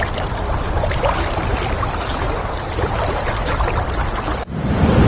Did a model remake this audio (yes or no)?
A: no